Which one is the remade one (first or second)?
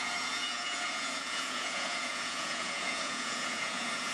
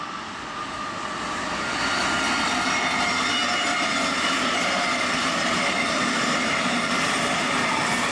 first